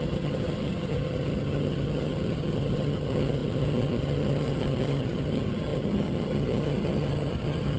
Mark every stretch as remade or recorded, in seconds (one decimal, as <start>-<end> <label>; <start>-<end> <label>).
0.0-7.8 remade